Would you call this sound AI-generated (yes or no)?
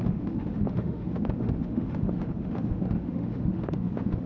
yes